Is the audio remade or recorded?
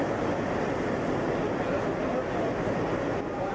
recorded